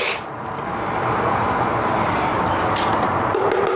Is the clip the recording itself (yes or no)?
yes